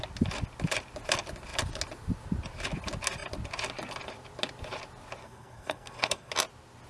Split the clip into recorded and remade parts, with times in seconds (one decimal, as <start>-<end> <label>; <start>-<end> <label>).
0.0-5.2 recorded; 5.2-6.3 remade; 6.3-6.9 recorded